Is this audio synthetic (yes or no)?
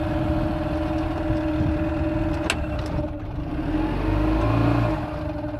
no